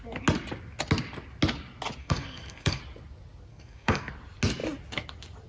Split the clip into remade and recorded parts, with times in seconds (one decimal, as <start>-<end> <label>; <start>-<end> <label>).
0.0-2.0 recorded; 2.0-2.8 remade; 2.8-3.5 recorded; 3.5-4.1 remade; 4.1-5.5 recorded